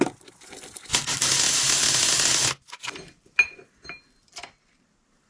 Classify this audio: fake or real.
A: real